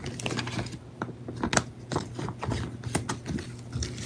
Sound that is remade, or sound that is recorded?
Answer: recorded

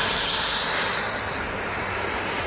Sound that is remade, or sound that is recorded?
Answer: recorded